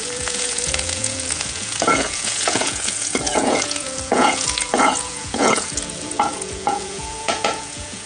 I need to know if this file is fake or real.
fake